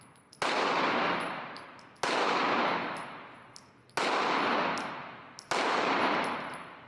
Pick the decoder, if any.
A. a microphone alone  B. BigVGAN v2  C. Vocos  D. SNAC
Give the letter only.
A